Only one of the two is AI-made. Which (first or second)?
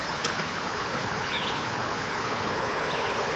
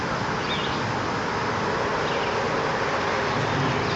first